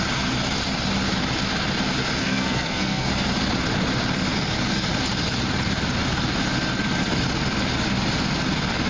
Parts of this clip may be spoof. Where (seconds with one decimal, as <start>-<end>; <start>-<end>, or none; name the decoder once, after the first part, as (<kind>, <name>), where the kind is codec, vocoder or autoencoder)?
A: 2.2-3.1 (codec, SNAC)